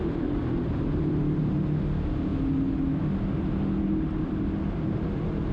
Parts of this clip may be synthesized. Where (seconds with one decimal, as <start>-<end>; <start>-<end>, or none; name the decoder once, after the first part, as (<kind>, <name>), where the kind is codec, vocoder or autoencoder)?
none